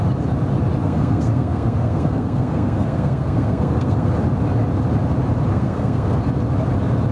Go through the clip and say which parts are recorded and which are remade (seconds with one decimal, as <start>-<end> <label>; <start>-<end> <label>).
0.0-0.8 recorded; 0.8-4.1 remade; 4.1-5.5 recorded; 5.5-6.2 remade; 6.2-7.1 recorded